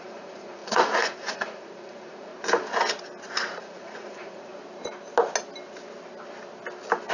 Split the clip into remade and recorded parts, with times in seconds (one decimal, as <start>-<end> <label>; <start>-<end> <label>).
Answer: 0.0-2.3 remade; 2.3-3.6 recorded; 3.6-4.5 remade; 4.5-7.1 recorded